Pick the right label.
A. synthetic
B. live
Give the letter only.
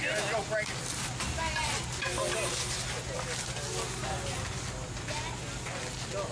B